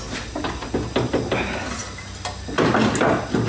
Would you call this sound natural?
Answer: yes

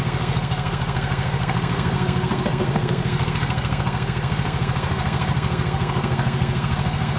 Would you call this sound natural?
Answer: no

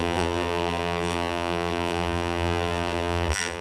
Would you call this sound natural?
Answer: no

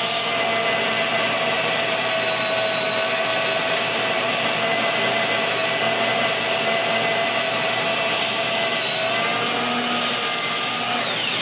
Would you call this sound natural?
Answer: yes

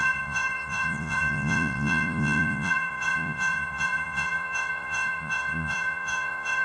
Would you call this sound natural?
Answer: no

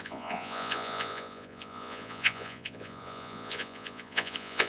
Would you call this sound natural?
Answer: no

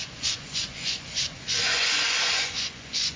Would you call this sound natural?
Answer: no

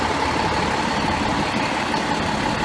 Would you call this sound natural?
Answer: yes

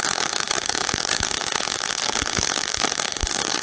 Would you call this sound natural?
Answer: no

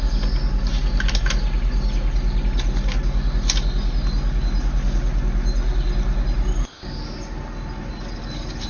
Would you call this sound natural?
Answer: yes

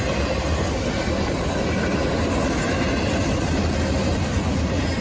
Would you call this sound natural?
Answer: yes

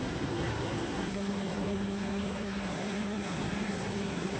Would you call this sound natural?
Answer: no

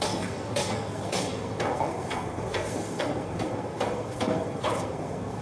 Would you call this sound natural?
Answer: no